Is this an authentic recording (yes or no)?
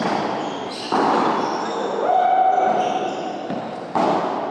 yes